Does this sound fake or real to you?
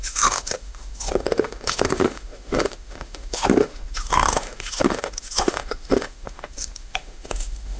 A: fake